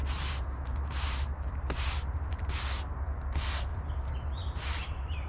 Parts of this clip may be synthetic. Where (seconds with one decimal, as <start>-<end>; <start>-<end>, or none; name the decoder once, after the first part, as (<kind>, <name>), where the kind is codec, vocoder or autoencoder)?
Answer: 0.0-2.5 (vocoder, BigVGAN v2); 3.7-5.3